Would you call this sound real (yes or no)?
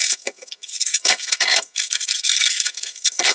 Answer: no